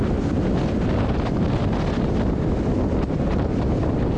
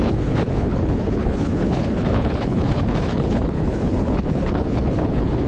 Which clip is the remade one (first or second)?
second